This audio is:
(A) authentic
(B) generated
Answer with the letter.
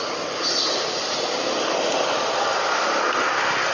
A